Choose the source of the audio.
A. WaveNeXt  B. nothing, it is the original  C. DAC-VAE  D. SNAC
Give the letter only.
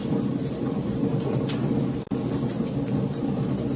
B